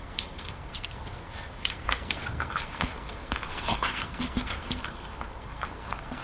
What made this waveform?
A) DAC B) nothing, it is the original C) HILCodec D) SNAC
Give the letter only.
D